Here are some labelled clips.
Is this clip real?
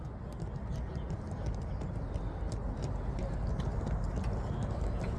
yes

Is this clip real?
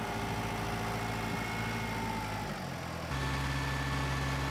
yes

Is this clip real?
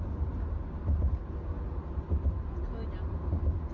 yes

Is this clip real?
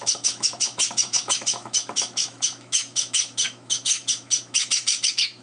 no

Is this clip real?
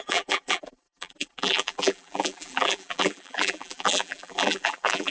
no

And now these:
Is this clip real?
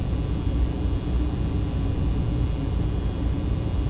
yes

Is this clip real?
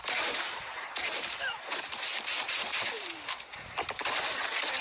no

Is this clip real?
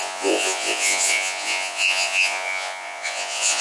no